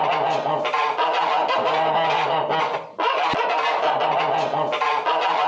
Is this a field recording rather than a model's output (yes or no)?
yes